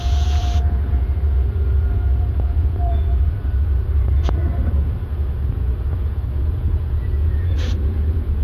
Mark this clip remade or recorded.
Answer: remade